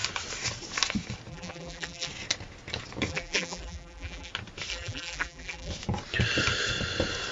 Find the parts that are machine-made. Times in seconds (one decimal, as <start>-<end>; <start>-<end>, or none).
1.3-2.1; 3.1-4.3; 4.7-5.7